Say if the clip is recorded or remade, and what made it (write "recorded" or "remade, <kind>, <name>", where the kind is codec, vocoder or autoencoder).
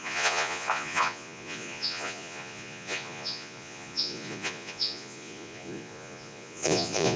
remade, vocoder, Vocos